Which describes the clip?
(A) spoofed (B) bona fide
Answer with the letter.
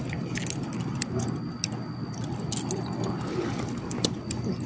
B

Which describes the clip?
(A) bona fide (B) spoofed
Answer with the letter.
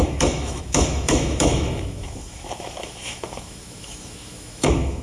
B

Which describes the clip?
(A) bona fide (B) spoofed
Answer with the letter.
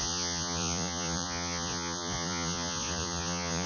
B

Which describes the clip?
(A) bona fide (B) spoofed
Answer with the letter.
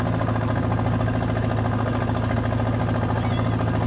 A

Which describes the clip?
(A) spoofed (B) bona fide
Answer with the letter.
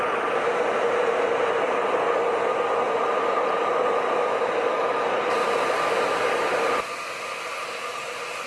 B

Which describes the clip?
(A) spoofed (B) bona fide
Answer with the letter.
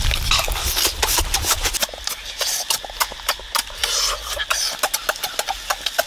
B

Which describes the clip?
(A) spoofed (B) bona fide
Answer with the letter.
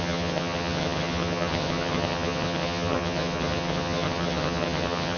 A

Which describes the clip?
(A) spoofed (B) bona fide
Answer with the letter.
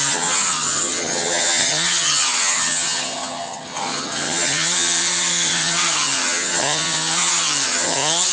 A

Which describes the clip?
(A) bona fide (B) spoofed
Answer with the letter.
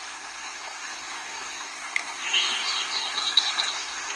B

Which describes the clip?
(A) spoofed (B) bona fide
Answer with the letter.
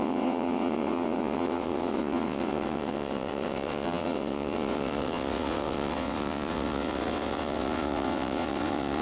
A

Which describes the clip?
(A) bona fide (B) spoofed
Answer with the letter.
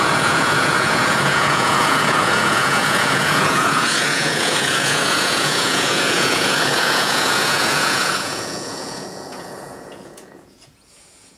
B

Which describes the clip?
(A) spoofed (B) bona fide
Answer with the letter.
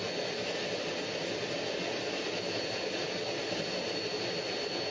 B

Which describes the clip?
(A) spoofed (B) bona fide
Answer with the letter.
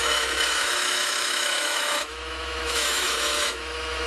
A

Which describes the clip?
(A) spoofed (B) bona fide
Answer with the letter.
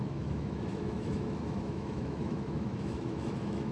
A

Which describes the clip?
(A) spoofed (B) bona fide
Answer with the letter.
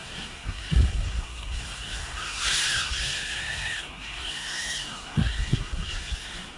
A